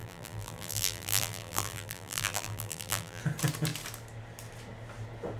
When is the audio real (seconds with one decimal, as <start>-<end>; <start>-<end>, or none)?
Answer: 3.2-5.4